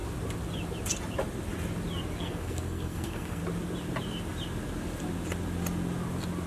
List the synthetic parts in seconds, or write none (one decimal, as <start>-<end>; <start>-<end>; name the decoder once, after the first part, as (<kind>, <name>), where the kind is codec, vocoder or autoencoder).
2.2-3.4 (codec, SNAC)